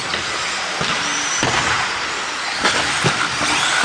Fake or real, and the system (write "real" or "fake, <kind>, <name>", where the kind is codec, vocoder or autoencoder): real